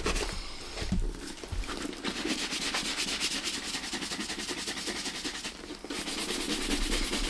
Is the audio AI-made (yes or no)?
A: no